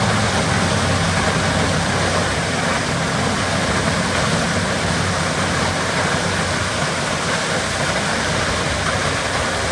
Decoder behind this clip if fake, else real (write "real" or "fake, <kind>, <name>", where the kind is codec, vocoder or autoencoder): real